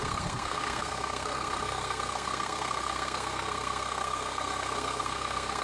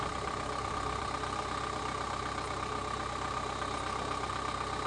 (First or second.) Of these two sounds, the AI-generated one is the first